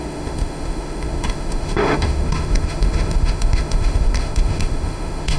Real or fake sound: fake